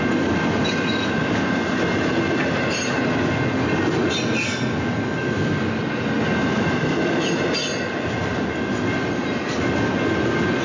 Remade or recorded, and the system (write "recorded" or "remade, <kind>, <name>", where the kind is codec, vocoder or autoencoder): recorded